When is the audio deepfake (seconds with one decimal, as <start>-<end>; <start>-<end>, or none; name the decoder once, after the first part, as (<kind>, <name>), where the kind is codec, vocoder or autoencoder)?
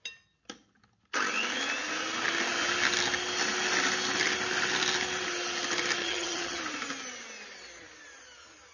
6.0-6.6 (vocoder, HiFi-GAN)